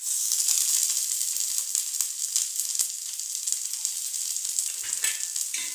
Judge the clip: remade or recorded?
recorded